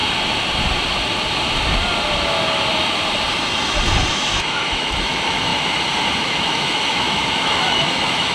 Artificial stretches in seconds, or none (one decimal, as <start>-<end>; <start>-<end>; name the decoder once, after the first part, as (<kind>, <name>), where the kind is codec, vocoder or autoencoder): 4.1-5.5 (autoencoder, DAC-VAE); 6.2-8.3